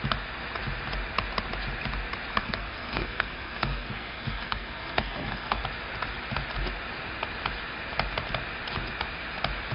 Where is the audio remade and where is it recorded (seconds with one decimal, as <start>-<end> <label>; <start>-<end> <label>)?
0.0-2.4 recorded; 2.4-5.6 remade; 5.6-9.7 recorded